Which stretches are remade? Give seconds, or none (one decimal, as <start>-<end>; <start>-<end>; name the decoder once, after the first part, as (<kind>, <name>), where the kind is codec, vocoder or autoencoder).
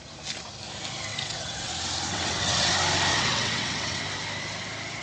1.1-1.7 (vocoder, WaveNeXt); 2.1-2.7; 3.1-4.0